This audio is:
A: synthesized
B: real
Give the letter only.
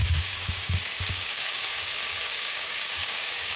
A